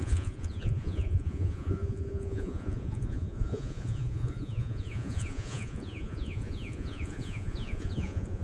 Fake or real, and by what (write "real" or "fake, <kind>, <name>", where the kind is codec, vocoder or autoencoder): fake, vocoder, Vocos